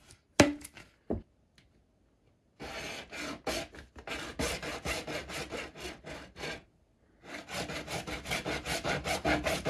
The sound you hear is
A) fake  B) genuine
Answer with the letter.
B